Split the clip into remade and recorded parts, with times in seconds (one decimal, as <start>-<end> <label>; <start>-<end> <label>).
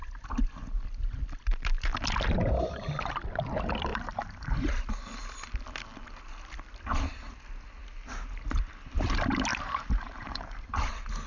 0.0-3.9 recorded; 3.9-4.5 remade; 4.5-9.5 recorded; 9.5-10.9 remade; 10.9-11.3 recorded